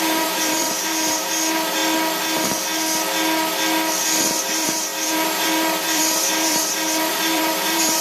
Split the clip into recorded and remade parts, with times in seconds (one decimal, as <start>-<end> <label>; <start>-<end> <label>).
0.0-1.8 remade; 1.8-4.4 recorded; 4.4-8.0 remade